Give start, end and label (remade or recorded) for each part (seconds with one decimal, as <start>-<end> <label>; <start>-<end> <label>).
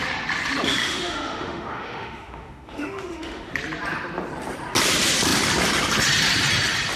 0.0-0.8 recorded; 0.8-3.5 remade; 3.5-7.0 recorded